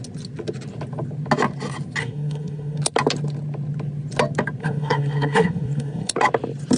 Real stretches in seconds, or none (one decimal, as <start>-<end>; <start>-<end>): 0.0-2.0; 2.8-4.6; 6.1-6.8